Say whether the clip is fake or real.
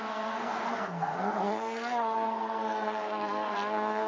fake